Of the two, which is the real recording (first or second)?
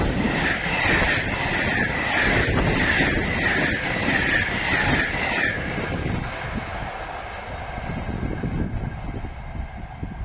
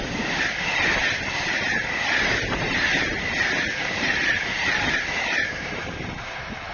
first